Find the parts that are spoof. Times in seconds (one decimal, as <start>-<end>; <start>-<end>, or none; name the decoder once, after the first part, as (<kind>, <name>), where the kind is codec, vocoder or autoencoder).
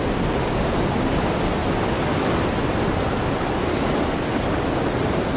none